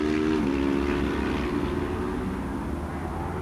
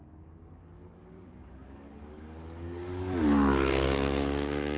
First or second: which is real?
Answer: first